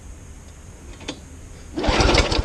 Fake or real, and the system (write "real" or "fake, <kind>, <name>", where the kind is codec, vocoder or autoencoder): real